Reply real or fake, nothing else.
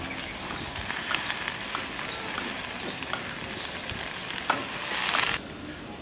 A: real